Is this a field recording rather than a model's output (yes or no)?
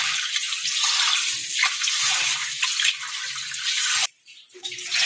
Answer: no